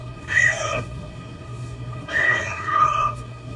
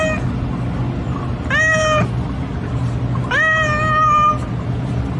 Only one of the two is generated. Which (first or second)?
first